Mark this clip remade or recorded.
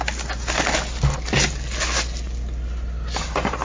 recorded